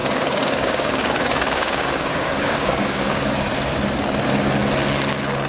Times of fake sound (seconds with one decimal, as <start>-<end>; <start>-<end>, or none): 0.0-3.3